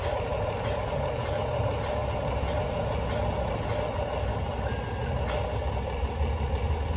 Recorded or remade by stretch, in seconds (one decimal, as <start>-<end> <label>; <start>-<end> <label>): 0.0-7.0 recorded